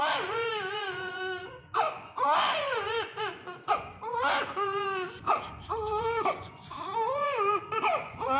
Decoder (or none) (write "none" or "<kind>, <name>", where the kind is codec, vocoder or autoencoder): vocoder, Vocos